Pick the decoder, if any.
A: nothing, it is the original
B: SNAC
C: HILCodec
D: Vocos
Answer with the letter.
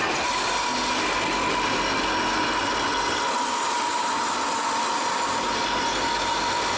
A